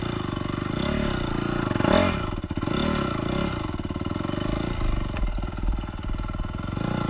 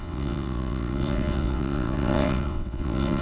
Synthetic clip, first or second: second